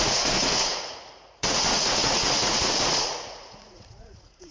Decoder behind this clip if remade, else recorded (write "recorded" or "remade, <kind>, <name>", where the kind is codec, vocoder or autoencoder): remade, vocoder, Vocos